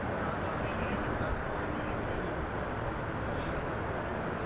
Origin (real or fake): real